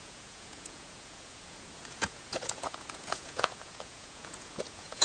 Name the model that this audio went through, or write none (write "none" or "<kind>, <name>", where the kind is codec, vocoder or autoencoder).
vocoder, Vocos